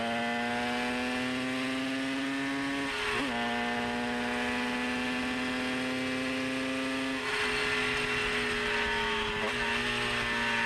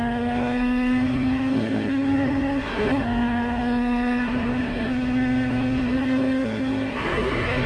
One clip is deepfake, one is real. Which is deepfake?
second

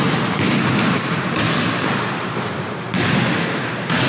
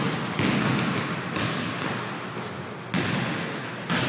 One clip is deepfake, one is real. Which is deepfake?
first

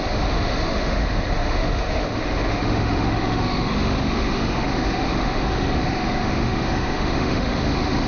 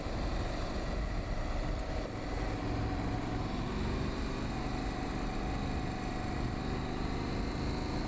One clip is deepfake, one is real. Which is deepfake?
first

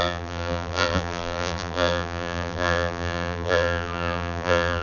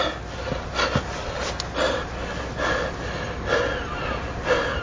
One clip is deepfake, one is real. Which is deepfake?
first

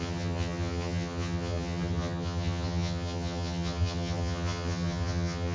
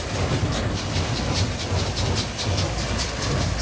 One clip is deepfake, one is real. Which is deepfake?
first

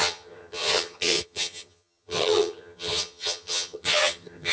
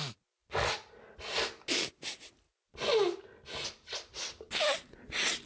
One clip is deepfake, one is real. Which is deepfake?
first